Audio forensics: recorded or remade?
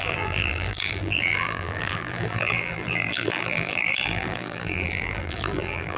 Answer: remade